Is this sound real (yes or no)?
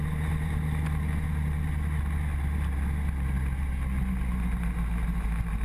yes